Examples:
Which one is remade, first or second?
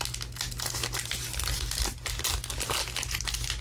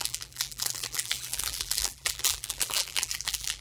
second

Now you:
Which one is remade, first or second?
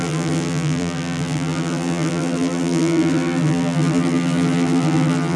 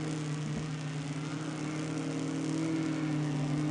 first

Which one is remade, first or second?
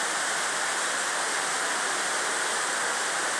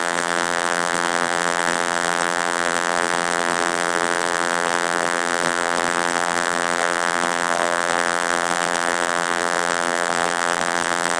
second